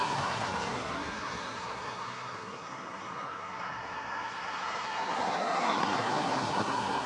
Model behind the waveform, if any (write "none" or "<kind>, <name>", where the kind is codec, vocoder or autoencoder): codec, SNAC